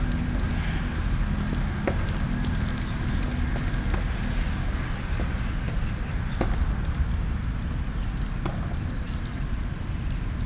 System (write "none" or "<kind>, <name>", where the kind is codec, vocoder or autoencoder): none